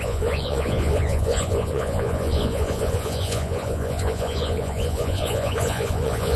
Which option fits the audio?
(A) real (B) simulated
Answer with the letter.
B